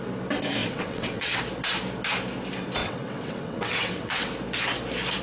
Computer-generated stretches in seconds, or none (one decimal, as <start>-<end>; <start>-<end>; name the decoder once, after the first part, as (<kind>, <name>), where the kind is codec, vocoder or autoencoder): 0.6-1.4 (vocoder, WaveNeXt); 2.8-4.3